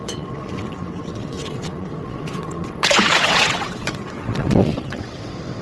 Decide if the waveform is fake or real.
fake